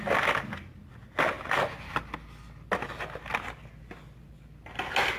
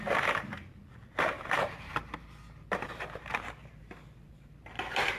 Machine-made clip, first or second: second